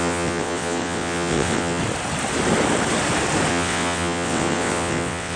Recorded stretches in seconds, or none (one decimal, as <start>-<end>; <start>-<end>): 1.8-3.5

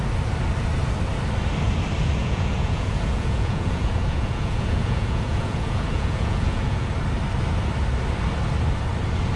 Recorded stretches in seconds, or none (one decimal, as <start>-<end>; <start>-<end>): 0.0-2.2; 6.9-9.4

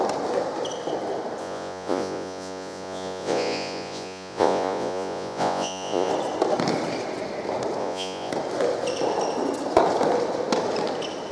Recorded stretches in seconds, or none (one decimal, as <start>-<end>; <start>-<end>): 0.0-1.4; 6.1-7.8; 8.3-11.3

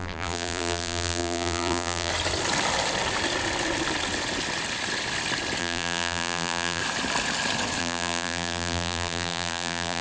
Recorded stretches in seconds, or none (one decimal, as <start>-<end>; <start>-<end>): 2.1-5.6; 6.8-7.8